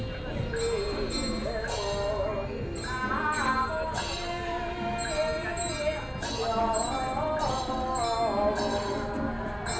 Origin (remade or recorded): recorded